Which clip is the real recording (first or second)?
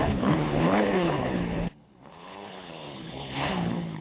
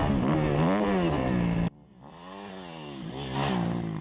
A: second